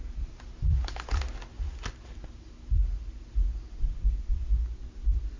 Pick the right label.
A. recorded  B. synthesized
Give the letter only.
A